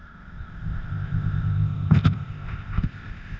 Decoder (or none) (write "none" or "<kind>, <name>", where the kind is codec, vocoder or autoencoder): codec, ZipCodec